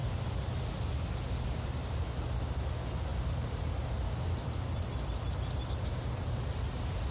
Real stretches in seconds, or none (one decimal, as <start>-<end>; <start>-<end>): 0.0-7.1